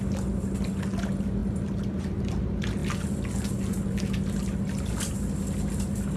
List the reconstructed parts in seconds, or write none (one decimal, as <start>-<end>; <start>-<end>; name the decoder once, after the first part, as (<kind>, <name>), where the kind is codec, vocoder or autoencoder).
none